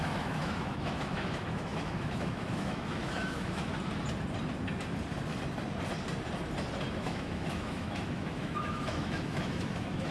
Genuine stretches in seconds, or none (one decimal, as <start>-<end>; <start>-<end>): 3.7-6.9